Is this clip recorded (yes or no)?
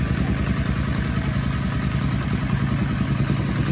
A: yes